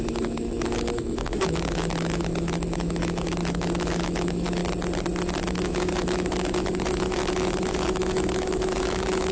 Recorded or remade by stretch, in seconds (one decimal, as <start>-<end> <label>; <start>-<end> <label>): 0.0-4.6 remade; 4.6-5.5 recorded; 5.5-9.3 remade